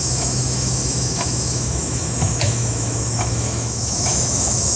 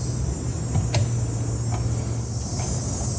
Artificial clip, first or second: first